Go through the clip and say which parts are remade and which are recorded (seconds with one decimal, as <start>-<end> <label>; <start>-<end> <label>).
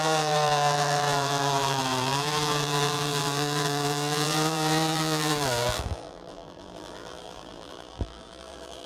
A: 0.0-8.9 remade